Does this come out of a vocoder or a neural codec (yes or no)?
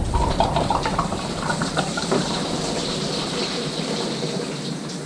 yes